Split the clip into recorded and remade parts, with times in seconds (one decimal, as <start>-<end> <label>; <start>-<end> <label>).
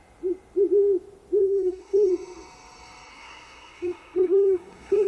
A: 0.0-1.4 recorded; 1.4-2.1 remade; 2.1-3.1 recorded; 3.1-5.1 remade